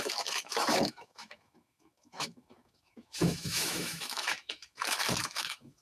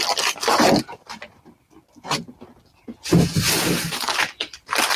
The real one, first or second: second